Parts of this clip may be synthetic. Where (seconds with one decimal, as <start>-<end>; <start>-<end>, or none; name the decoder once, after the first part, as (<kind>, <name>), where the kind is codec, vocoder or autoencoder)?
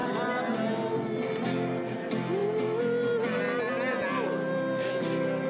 none